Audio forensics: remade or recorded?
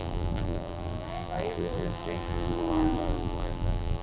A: remade